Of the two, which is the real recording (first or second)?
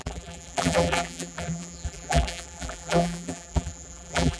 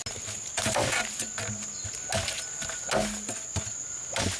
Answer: second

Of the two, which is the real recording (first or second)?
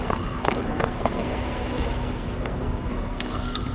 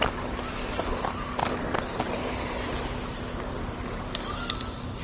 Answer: second